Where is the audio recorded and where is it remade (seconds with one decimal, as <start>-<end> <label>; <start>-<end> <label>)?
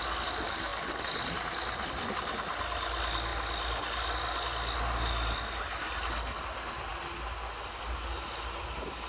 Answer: 0.0-9.1 recorded